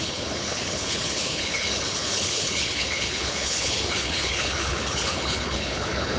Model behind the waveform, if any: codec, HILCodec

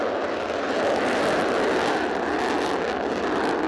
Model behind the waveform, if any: none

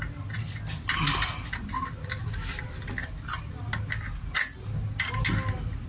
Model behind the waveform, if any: none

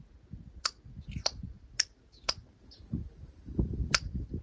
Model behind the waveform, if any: none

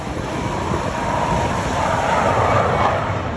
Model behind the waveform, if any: none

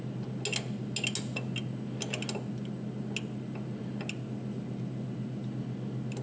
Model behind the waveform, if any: none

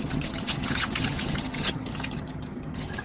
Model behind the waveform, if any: vocoder, HiFi-GAN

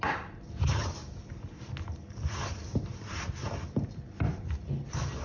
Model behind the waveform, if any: none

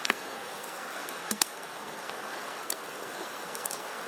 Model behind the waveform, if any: codec, SNAC